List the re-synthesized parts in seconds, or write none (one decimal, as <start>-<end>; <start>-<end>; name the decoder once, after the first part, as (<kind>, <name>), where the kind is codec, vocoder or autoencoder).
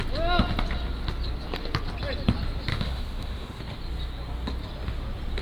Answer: 2.7-3.6 (autoencoder, DAC-VAE)